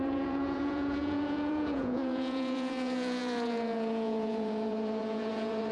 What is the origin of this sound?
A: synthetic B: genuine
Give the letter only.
A